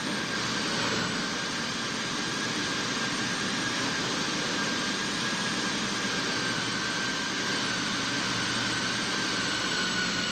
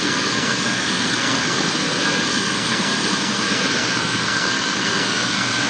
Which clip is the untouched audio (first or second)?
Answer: first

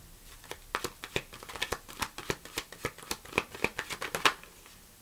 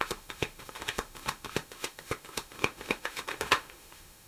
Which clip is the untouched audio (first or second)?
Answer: first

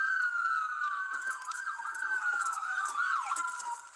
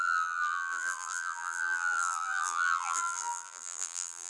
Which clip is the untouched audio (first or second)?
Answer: first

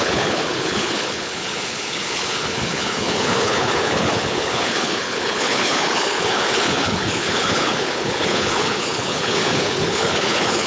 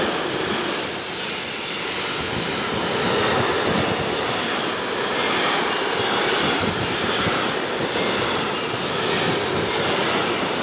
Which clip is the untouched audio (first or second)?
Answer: second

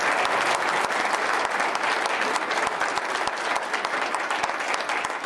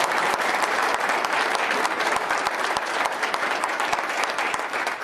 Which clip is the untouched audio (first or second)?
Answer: first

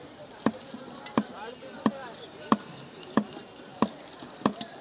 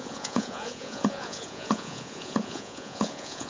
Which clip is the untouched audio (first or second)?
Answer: first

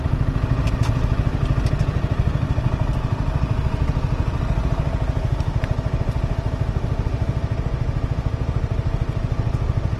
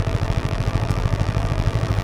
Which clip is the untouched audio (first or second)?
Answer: first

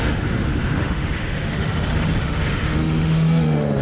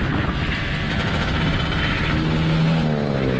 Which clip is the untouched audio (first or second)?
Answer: second